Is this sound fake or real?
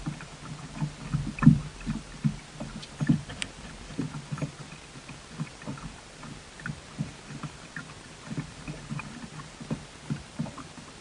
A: real